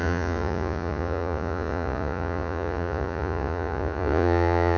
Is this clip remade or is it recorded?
remade